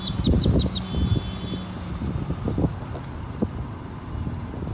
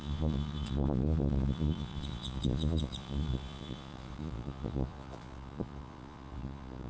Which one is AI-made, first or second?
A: second